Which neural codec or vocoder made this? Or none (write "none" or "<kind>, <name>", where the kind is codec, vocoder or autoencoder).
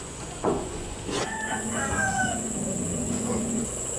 vocoder, Vocos